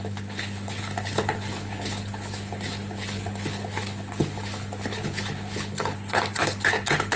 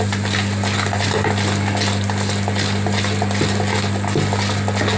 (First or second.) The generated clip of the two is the first